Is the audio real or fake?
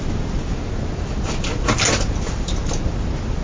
real